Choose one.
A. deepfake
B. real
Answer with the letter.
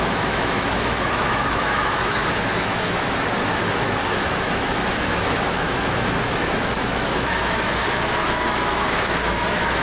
A